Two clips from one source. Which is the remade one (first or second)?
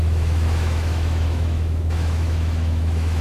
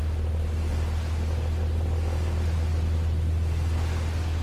first